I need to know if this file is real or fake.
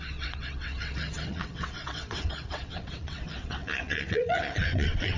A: fake